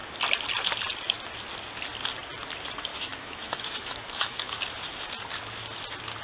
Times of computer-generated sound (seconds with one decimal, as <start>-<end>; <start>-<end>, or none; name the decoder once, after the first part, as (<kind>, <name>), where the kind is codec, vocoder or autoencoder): 2.9-4.6 (autoencoder, DAC-VAE)